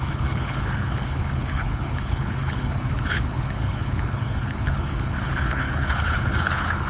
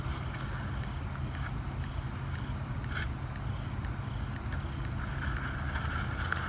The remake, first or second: first